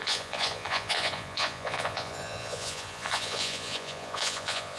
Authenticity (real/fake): fake